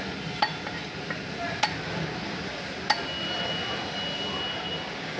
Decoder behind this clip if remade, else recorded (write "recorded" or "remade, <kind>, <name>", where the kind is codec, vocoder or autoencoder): recorded